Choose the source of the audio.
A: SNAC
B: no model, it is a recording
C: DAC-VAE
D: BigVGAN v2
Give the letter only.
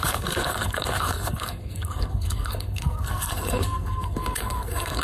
A